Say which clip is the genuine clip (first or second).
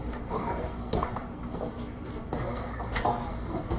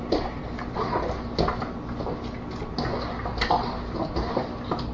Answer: second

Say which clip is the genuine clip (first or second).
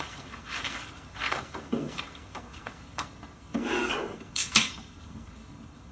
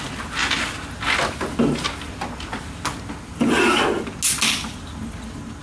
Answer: second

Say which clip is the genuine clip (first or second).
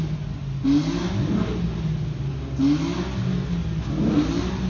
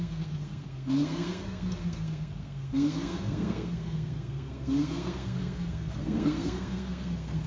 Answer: first